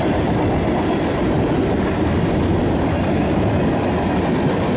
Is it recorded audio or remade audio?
recorded